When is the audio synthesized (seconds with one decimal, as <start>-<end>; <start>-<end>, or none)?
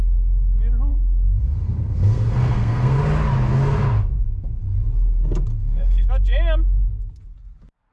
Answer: 0.9-3.0; 5.5-6.1